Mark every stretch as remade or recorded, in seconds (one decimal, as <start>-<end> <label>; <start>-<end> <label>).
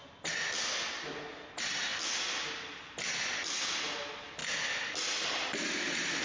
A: 0.0-6.2 recorded